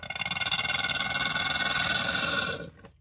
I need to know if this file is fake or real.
real